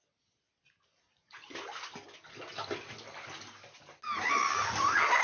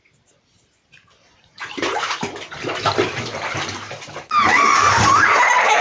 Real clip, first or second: first